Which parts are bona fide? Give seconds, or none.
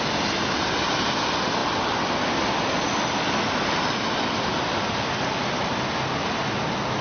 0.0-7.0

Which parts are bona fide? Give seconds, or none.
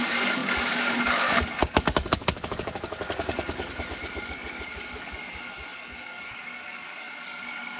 none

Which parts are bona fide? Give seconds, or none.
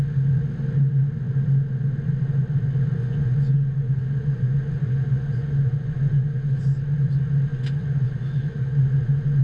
0.0-3.0; 6.6-7.5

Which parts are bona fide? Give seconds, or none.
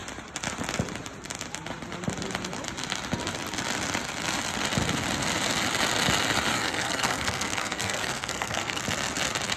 0.0-6.5; 8.8-9.6